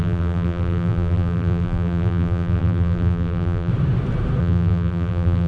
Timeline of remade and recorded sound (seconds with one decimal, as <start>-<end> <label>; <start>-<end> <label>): 0.0-3.7 remade; 3.7-4.4 recorded; 4.4-5.5 remade